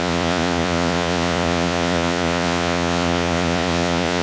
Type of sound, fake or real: fake